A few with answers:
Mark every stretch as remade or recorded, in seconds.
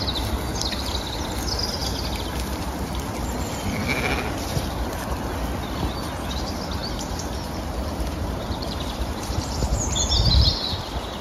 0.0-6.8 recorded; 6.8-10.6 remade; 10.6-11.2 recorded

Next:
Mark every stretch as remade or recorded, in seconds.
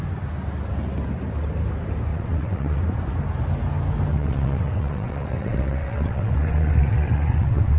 0.0-2.1 recorded; 2.1-2.8 remade; 2.8-4.1 recorded; 4.1-7.8 remade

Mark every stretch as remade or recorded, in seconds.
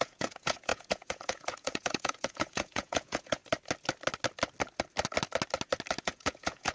0.0-3.4 remade; 3.4-6.0 recorded; 6.0-6.7 remade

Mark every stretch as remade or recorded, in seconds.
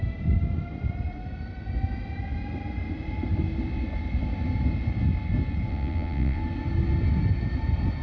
0.0-5.7 recorded; 5.7-6.4 remade; 6.4-8.0 recorded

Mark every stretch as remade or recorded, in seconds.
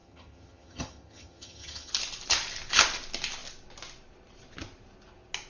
0.0-1.9 remade; 1.9-5.5 recorded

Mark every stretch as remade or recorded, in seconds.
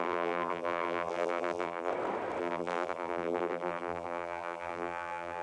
0.0-1.9 remade; 1.9-2.4 recorded; 2.4-5.4 remade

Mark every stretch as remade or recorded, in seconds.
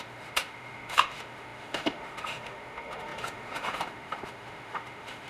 0.0-5.3 remade